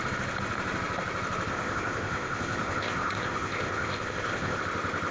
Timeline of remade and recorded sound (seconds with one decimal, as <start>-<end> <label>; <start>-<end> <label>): 0.0-1.5 recorded; 1.5-4.6 remade; 4.6-5.1 recorded

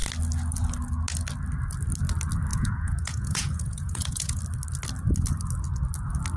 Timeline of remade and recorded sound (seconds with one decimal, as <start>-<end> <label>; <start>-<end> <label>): 0.0-2.5 recorded; 2.5-4.4 remade; 4.4-6.4 recorded

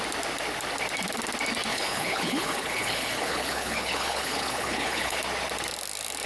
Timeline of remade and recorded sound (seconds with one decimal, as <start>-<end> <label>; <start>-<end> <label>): 0.0-1.7 recorded; 1.7-5.2 remade; 5.2-6.3 recorded

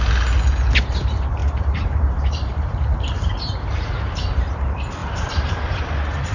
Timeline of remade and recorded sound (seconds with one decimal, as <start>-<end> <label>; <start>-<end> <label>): 0.0-1.4 recorded; 1.4-4.4 remade; 4.4-5.0 recorded; 5.0-5.8 remade; 5.8-6.3 recorded

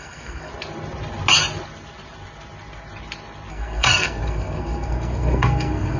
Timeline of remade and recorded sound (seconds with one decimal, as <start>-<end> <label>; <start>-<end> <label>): 0.0-0.5 remade; 0.5-3.5 recorded; 3.5-6.0 remade